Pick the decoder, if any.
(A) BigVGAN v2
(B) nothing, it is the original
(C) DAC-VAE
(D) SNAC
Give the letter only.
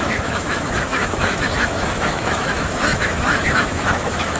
C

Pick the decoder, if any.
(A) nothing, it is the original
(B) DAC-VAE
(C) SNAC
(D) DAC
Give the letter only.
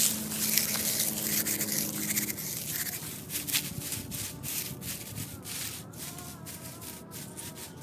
A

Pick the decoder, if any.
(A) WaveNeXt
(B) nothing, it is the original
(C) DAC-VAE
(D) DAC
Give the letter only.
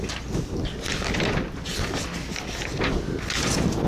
B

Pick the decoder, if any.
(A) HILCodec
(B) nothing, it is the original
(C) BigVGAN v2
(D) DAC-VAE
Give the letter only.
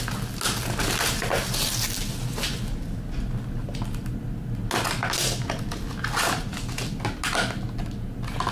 B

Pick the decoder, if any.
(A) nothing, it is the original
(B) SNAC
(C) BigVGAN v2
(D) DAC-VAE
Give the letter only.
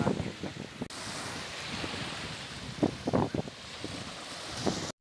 A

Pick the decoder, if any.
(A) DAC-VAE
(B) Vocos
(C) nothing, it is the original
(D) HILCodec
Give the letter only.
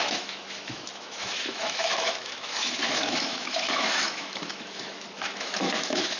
A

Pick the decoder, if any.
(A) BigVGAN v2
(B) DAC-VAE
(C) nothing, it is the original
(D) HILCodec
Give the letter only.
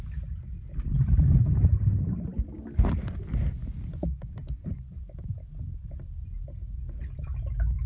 C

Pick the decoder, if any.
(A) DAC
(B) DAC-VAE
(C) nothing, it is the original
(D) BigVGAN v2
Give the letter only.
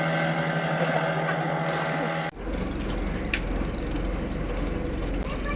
C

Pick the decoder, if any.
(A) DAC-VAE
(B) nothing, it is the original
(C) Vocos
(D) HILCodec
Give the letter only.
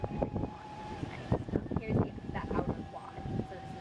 B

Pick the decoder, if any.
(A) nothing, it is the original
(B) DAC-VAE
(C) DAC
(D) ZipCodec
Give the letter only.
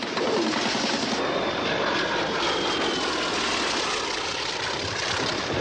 A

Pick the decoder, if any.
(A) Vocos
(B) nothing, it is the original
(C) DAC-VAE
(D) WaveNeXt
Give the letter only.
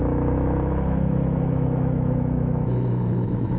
C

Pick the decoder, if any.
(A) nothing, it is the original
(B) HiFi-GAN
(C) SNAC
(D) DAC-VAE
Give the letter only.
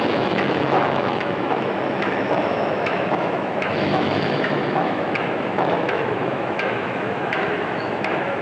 D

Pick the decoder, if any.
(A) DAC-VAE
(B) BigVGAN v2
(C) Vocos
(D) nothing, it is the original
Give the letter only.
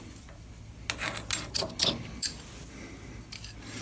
D